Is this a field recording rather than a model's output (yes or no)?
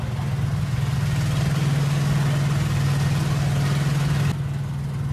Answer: yes